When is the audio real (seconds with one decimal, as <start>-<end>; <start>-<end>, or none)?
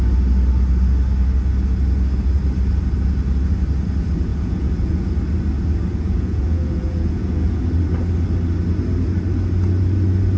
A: 0.0-4.3; 5.1-5.9; 7.6-10.4